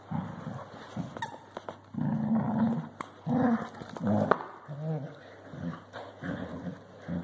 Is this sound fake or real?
real